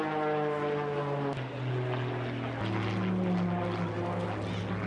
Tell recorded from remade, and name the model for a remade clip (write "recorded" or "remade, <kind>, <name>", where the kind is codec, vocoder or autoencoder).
recorded